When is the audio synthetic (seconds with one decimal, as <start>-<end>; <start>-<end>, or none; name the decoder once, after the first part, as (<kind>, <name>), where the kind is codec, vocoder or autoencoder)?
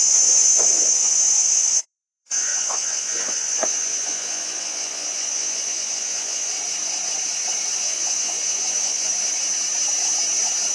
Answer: 0.0-6.5 (vocoder, Vocos); 7.8-9.1